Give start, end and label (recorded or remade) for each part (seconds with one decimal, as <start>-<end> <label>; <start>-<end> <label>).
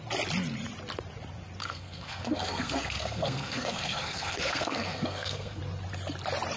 0.0-1.6 recorded; 1.6-5.6 remade; 5.6-6.6 recorded